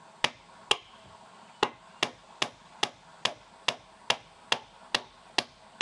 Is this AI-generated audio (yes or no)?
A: no